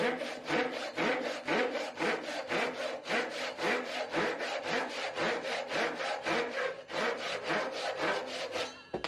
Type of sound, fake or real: real